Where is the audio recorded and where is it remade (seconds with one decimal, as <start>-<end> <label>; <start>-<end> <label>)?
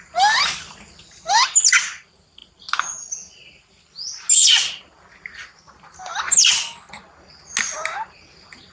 0.0-8.7 recorded